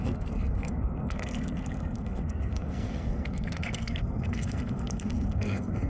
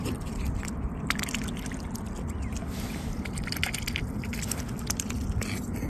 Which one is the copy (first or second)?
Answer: first